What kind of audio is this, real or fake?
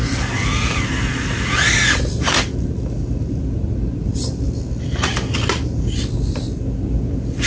real